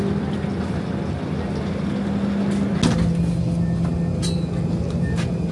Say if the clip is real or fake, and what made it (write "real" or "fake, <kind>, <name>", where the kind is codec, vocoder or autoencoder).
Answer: real